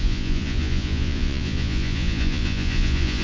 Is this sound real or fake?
fake